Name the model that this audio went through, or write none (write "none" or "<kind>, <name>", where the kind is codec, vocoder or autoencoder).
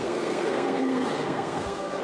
codec, SNAC